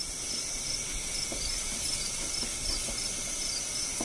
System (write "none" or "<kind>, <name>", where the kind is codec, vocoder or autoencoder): none